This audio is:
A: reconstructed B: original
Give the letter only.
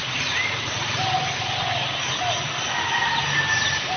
B